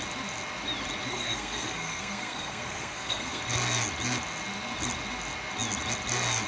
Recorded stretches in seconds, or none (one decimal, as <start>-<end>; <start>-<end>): 0.0-1.1; 3.4-6.5